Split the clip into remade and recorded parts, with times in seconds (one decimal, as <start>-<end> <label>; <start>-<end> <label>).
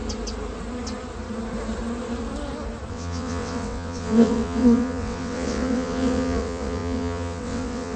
0.0-2.9 recorded; 2.9-8.0 remade